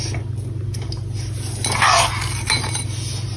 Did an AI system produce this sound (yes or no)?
no